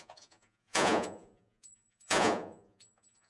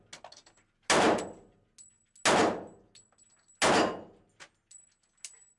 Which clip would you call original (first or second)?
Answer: second